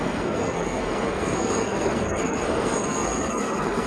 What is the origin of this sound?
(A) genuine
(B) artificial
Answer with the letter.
B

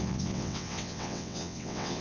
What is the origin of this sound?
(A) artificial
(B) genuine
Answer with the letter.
A